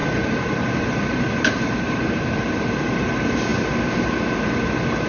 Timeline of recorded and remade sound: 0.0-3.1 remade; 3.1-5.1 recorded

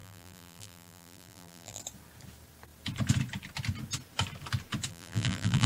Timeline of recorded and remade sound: 0.0-1.8 remade; 1.8-4.9 recorded; 4.9-5.7 remade

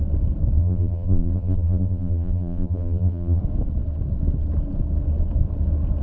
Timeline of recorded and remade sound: 0.0-0.6 recorded; 0.6-3.4 remade; 3.4-6.0 recorded

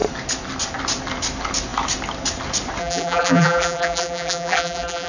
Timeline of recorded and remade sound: 0.0-2.8 recorded; 2.8-5.1 remade

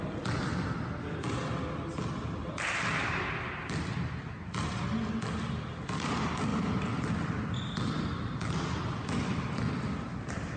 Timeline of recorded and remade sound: 0.0-10.6 recorded

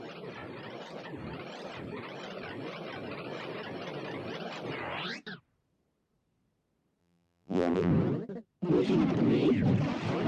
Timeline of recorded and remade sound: 0.0-7.0 recorded; 7.0-7.9 remade; 7.9-10.3 recorded